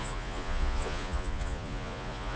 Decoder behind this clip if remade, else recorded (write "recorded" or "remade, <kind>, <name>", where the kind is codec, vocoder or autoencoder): remade, vocoder, Vocos